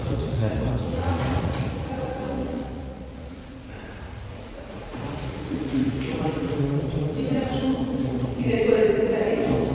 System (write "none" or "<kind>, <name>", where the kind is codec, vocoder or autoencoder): vocoder, Vocos